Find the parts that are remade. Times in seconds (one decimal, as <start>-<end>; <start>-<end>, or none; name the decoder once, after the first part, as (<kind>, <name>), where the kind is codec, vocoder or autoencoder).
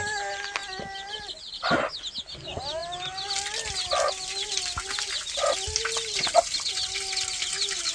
none